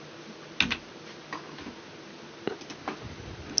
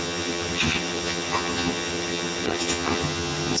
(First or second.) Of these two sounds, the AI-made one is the second